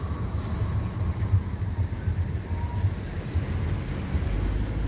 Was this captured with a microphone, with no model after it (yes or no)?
yes